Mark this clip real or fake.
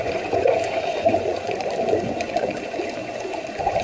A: fake